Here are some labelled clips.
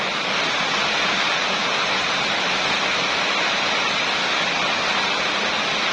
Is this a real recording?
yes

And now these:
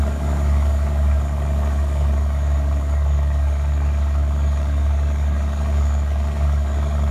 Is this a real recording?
no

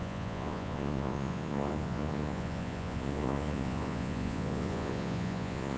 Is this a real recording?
no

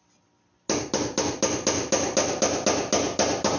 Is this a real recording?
yes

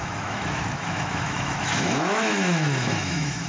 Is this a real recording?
no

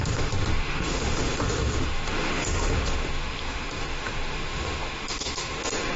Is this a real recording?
no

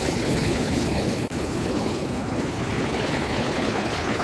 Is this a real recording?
no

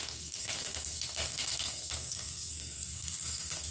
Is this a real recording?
no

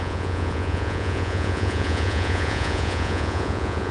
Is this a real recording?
no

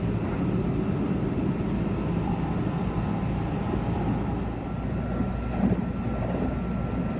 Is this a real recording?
yes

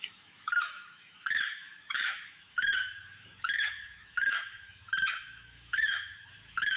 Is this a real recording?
no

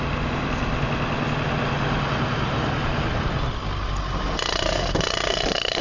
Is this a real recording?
yes